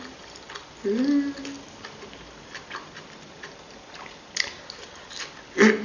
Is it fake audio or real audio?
real